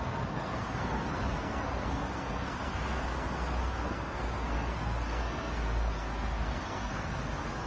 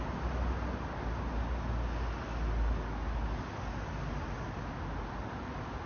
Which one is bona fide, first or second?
second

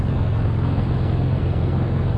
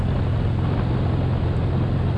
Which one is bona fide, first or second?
second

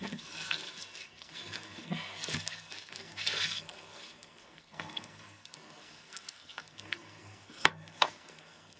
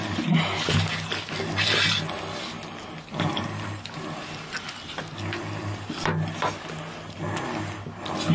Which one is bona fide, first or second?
second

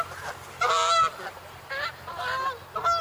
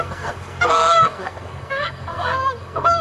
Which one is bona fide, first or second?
first